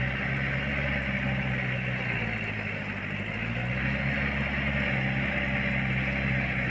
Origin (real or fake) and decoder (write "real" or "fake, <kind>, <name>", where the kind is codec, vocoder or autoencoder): real